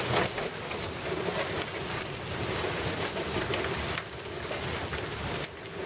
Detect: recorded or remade recorded